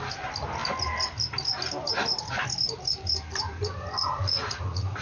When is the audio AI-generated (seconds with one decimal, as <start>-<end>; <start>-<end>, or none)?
4.1-5.0